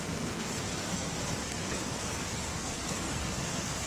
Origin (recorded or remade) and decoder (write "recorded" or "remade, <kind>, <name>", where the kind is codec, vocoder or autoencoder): remade, codec, SNAC